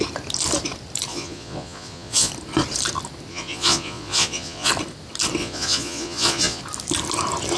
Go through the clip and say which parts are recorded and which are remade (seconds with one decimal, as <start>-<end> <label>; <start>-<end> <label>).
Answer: 0.0-1.1 recorded; 1.1-2.3 remade; 2.3-3.3 recorded; 3.3-4.7 remade; 4.7-5.4 recorded; 5.4-6.6 remade; 6.6-7.6 recorded